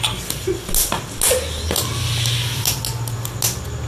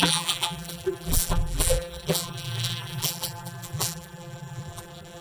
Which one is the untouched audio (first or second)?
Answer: first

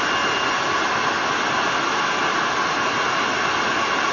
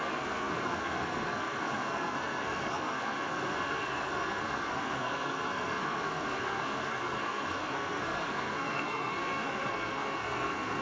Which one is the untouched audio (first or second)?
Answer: first